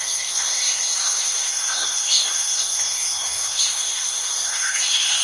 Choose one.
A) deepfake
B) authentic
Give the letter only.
A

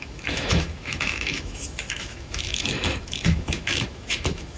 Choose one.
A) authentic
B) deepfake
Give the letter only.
B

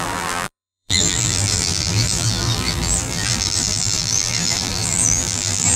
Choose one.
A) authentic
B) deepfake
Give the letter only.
B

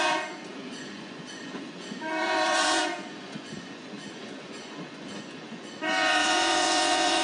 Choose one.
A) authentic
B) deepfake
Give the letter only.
B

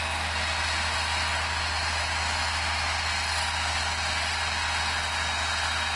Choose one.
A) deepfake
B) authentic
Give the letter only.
B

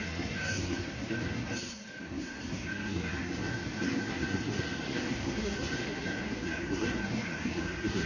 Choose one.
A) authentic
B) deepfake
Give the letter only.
B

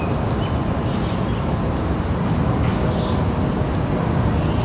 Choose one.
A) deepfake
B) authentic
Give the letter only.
B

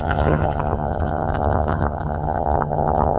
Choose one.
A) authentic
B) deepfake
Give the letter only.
B